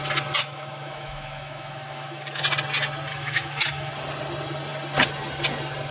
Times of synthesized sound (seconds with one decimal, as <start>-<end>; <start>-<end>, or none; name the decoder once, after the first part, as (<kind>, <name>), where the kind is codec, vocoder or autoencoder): 0.4-2.4 (autoencoder, DAC-VAE); 3.1-3.9